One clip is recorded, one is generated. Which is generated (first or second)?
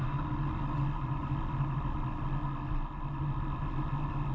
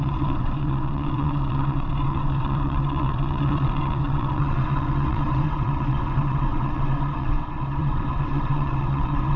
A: second